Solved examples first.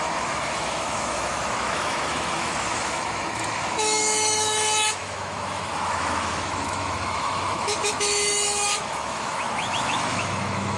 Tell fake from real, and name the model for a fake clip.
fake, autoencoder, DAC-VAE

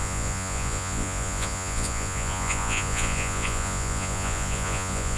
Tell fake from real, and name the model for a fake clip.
fake, vocoder, Vocos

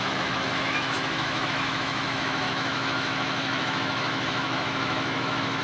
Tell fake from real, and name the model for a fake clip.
fake, autoencoder, DAC-VAE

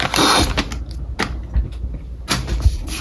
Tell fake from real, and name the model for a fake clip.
real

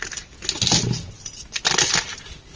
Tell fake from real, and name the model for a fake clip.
real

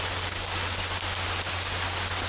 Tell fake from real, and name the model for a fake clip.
real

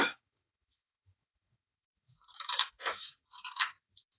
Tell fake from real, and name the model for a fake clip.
fake, autoencoder, DAC-VAE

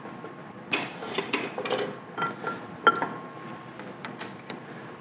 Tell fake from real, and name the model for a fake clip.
real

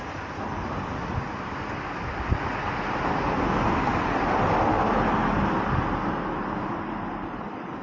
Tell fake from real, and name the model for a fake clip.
real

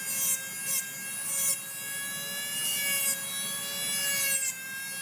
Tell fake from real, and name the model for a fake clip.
real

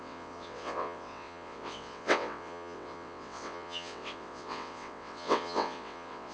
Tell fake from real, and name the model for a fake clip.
fake, vocoder, WaveNeXt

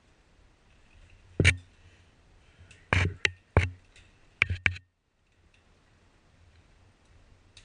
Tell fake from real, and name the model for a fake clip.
real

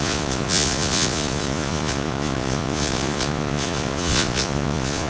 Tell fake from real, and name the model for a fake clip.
fake, vocoder, Vocos